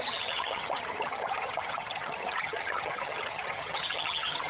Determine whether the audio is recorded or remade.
remade